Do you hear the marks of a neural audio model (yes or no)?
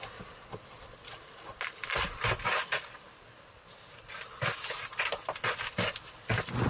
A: no